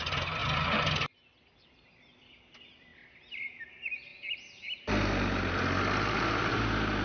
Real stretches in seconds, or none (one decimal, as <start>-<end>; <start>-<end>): 0.0-7.0